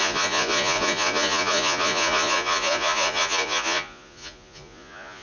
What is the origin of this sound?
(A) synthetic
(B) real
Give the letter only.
A